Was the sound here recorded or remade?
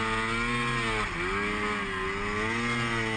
recorded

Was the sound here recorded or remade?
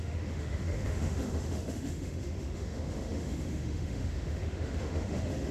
remade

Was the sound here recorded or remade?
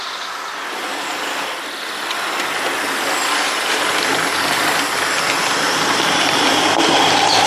recorded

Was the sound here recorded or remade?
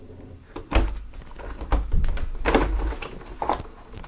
recorded